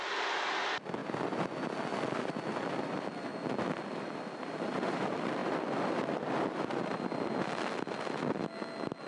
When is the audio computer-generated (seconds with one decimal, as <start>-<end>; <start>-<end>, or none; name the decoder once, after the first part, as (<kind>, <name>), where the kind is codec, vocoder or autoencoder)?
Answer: 0.0-1.0 (vocoder, BigVGAN v2); 2.8-3.3; 3.8-9.1